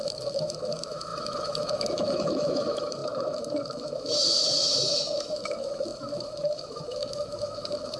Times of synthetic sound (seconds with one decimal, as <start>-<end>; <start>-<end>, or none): 0.0-8.0